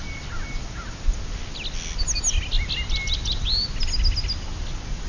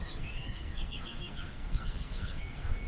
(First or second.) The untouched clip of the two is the first